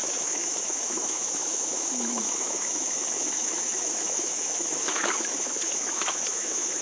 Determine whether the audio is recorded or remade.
remade